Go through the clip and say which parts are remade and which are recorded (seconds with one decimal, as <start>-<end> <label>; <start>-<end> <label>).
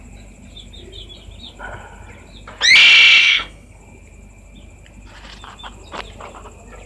0.0-3.2 recorded; 3.2-3.8 remade; 3.8-6.9 recorded